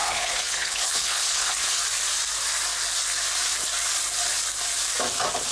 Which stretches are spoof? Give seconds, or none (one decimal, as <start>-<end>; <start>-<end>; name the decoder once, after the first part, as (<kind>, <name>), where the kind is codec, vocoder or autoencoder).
0.0-1.8 (codec, HILCodec)